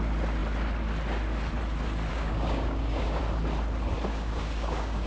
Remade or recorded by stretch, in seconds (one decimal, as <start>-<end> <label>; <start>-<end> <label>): 0.0-2.1 recorded; 2.1-3.2 remade; 3.2-4.1 recorded; 4.1-5.1 remade

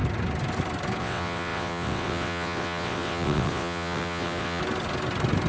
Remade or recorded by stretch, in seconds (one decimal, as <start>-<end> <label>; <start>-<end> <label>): 0.0-1.0 recorded; 1.0-4.6 remade; 4.6-5.5 recorded

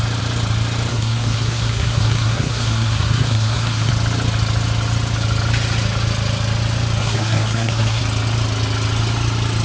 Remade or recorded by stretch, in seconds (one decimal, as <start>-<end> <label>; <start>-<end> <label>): 0.0-0.9 recorded; 0.9-3.9 remade; 3.9-7.0 recorded; 7.0-8.0 remade; 8.0-9.6 recorded

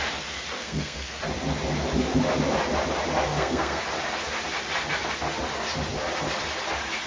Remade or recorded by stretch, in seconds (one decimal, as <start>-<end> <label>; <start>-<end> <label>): 0.0-0.6 recorded; 0.6-1.2 remade; 1.2-3.3 recorded; 3.3-3.8 remade; 3.8-7.1 recorded

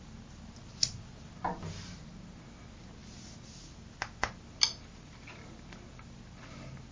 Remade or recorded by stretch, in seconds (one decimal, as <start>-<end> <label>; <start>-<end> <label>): 0.0-6.9 recorded

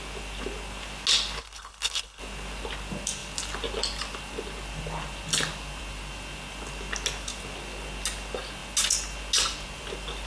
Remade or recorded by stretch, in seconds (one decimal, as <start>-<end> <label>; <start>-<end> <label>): 0.0-1.4 recorded; 1.4-2.2 remade; 2.2-10.3 recorded